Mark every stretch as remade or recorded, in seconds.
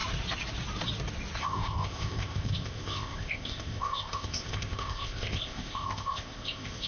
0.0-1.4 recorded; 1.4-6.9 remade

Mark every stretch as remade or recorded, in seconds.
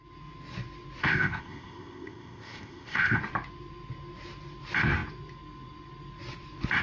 0.0-1.0 recorded; 1.0-3.2 remade; 3.2-6.8 recorded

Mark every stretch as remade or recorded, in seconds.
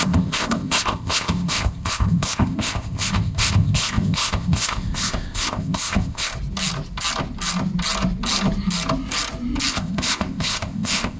0.0-6.3 remade; 6.3-9.7 recorded; 9.7-11.2 remade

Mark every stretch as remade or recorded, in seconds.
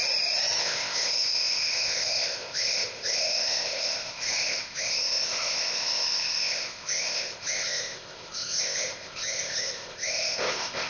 0.0-0.6 recorded; 0.6-10.9 remade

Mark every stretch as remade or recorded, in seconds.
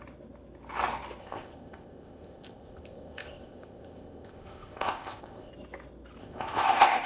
0.0-1.2 recorded; 1.2-5.5 remade; 5.5-6.2 recorded; 6.2-7.1 remade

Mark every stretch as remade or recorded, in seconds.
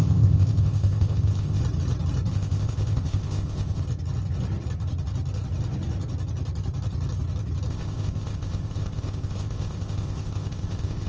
0.0-1.6 remade; 1.6-2.3 recorded; 2.3-3.8 remade; 3.8-7.7 recorded; 7.7-11.1 remade